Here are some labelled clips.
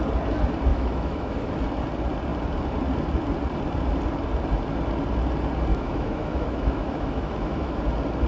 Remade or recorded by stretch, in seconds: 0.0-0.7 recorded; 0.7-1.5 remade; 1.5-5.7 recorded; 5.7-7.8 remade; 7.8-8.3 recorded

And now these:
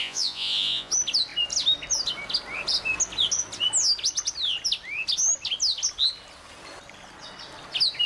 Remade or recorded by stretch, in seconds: 0.0-0.9 remade; 0.9-8.1 recorded

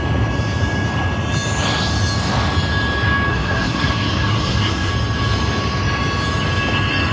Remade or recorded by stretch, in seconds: 0.0-3.3 recorded; 3.3-4.9 remade; 4.9-7.1 recorded

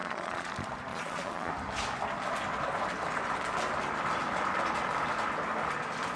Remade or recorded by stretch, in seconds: 0.0-0.5 remade; 0.5-0.9 recorded; 0.9-1.5 remade; 1.5-6.2 recorded

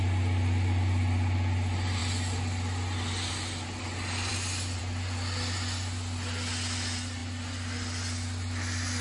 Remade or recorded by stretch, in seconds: 0.0-9.0 recorded

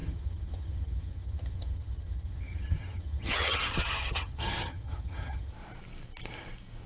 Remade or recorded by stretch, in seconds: 0.0-5.5 remade; 5.5-6.9 recorded

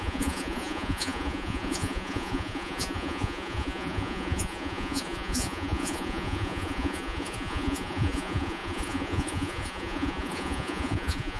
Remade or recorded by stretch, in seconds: 0.0-11.4 remade